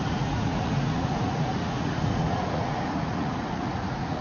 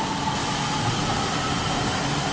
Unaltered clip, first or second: second